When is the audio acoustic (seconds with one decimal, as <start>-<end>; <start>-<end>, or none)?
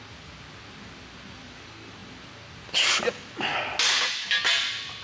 0.0-5.0